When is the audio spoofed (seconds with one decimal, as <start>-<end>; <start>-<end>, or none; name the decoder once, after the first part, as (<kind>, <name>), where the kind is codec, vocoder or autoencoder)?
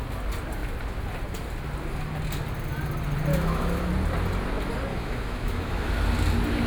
3.3-3.9 (autoencoder, DAC-VAE); 4.9-5.9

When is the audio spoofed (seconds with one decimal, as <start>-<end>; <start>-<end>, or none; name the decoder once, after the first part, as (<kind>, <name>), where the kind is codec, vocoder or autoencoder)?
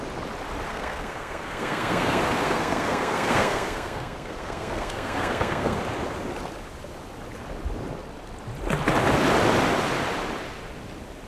0.7-5.8 (codec, SNAC)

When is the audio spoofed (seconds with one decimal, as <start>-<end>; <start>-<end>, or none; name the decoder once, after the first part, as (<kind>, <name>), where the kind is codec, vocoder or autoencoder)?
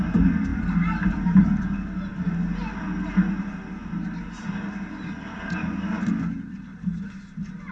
none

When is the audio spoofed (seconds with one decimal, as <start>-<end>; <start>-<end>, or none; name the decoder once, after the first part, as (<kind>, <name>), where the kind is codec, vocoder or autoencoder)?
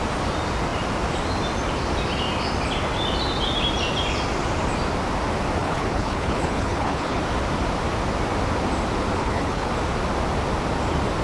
5.6-7.2 (codec, HILCodec); 9.2-9.7